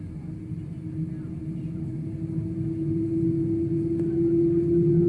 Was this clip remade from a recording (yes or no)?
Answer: no